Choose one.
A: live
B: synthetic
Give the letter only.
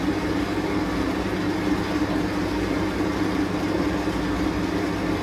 A